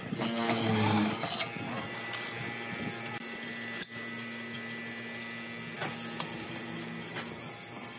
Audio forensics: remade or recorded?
recorded